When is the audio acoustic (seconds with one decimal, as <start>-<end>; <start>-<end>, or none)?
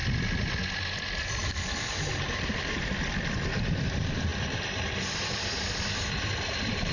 0.0-1.4; 2.7-4.3; 5.0-6.9